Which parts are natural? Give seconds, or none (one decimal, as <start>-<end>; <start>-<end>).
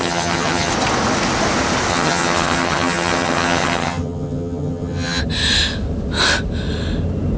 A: 0.7-1.9; 5.2-7.4